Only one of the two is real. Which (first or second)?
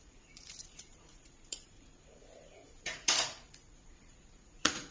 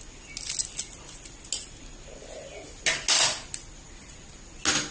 second